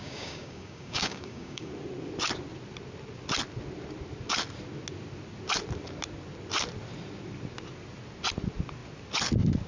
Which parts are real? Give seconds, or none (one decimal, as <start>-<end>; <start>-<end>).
1.7-9.7

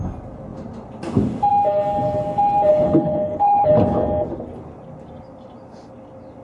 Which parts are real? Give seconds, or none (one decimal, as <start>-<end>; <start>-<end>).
0.0-2.7; 3.7-6.4

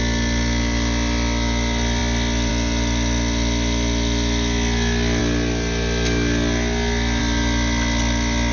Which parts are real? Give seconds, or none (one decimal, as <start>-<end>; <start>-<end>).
0.0-8.5

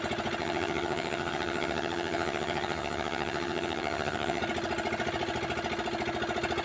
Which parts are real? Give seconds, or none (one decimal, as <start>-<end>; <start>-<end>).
0.0-0.4; 4.4-6.6

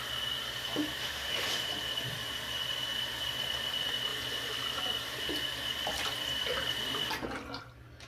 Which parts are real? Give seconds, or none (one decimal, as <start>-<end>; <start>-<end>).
0.0-1.0; 1.7-8.1

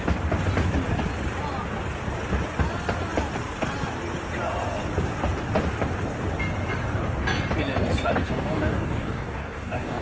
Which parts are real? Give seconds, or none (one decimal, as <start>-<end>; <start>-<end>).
0.0-8.2

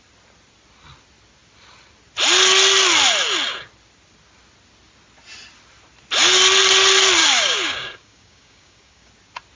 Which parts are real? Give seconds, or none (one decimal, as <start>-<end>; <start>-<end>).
0.0-7.2; 9.1-9.5

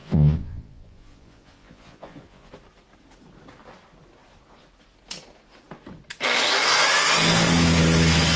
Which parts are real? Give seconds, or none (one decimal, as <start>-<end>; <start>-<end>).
2.5-8.4